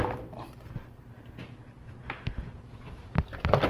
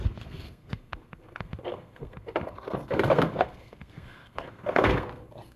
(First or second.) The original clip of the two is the first